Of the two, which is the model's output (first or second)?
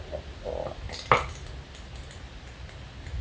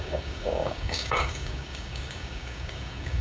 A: second